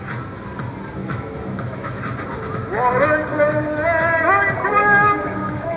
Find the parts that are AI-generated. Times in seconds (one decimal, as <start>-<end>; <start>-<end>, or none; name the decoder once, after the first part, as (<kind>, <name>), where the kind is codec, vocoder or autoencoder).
1.0-2.0 (autoencoder, DAC-VAE); 4.8-5.8